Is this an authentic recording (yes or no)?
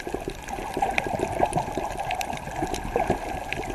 yes